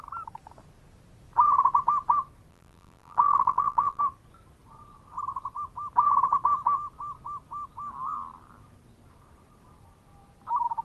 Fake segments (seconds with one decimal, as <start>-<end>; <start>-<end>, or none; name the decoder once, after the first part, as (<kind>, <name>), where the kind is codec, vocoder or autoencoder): 2.5-4.0 (vocoder, BigVGAN v2)